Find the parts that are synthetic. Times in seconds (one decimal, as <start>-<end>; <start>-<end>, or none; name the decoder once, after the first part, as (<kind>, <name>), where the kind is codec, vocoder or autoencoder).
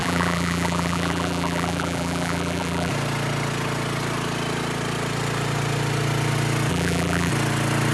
0.0-2.9 (vocoder, BigVGAN v2); 6.7-7.3